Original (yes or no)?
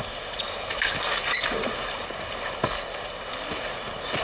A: yes